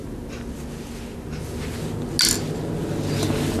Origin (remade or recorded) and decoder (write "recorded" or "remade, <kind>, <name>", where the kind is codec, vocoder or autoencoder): recorded